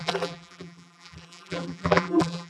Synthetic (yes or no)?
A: yes